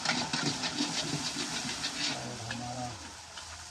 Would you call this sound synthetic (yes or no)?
no